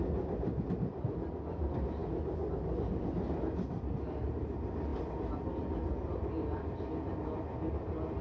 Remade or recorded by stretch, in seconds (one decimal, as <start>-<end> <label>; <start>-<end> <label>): 0.0-8.2 recorded